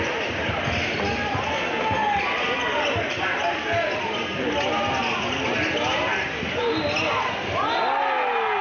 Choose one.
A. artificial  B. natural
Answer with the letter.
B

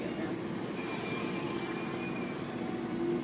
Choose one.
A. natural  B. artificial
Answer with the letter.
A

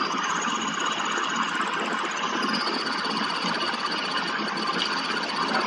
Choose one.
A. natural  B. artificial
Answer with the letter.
A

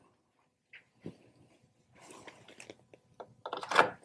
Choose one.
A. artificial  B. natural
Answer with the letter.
B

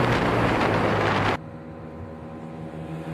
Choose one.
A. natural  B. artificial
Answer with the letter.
A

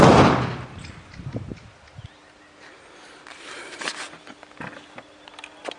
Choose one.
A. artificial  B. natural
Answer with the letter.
B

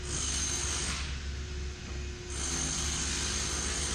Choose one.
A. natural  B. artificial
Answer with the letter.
A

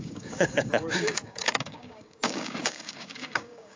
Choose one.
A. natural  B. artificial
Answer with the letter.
B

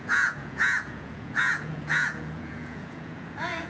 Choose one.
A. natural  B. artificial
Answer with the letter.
B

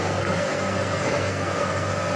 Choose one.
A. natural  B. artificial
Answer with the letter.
B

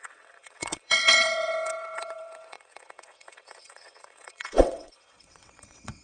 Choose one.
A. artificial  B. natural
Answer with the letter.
A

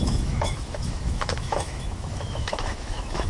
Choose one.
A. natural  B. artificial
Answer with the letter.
B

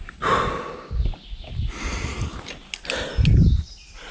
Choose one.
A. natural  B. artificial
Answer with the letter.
A